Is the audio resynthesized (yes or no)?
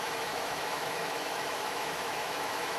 yes